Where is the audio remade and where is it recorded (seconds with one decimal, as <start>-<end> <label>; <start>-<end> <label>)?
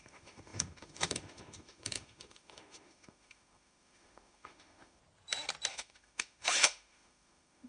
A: 0.0-5.0 remade; 5.0-5.7 recorded; 5.7-7.7 remade